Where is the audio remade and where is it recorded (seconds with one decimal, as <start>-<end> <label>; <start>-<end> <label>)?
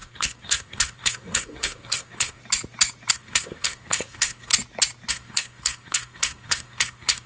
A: 0.0-2.4 remade; 2.4-3.1 recorded; 3.1-4.5 remade; 4.5-5.1 recorded; 5.1-7.3 remade